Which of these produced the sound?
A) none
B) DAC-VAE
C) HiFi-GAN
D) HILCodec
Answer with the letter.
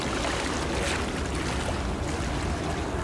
A